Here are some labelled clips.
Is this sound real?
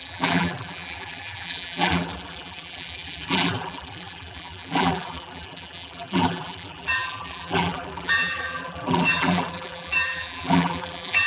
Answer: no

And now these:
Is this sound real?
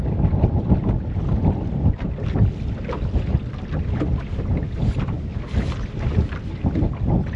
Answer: yes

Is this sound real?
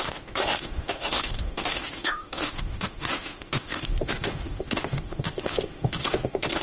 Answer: no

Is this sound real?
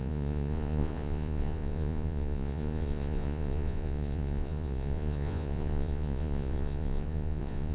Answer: no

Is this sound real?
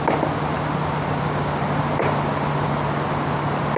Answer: yes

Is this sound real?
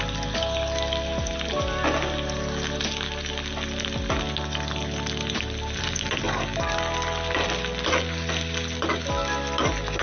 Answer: yes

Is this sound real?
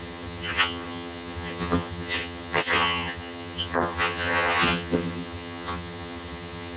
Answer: no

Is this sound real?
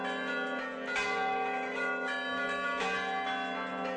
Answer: yes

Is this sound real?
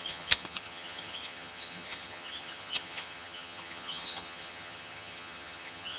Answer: no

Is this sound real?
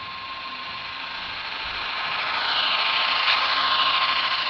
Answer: yes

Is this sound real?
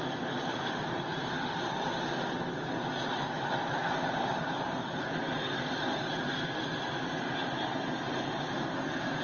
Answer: yes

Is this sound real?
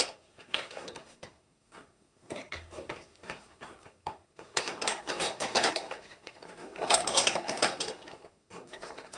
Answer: no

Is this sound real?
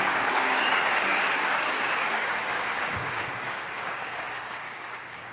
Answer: no